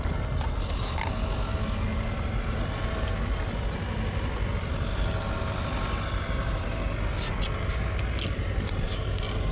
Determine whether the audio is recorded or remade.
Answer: recorded